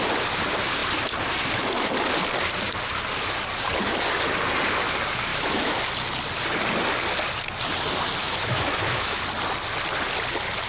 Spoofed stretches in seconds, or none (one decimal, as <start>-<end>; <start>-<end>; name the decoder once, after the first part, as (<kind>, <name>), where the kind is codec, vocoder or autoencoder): 5.3-5.8 (autoencoder, DAC-VAE); 8.2-9.2